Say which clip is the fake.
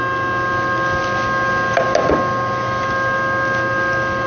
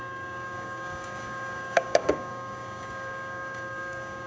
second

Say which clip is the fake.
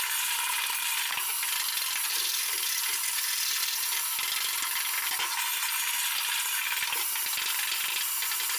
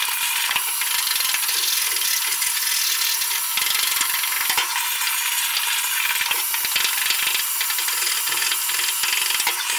first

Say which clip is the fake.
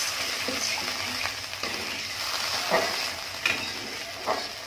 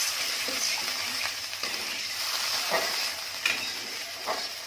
second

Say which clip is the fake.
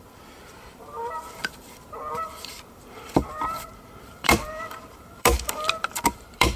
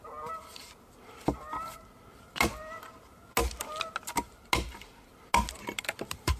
first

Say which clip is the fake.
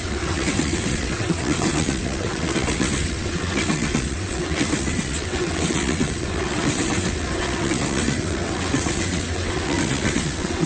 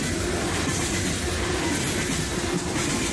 first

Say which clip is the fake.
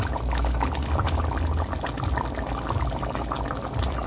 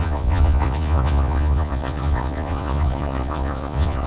second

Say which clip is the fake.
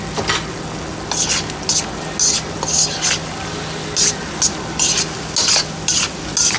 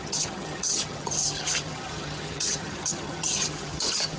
second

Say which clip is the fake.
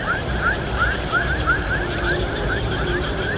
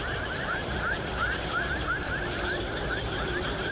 second